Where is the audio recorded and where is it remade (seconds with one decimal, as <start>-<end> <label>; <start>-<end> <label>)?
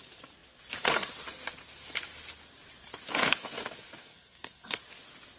0.0-4.0 recorded; 4.0-4.8 remade; 4.8-5.4 recorded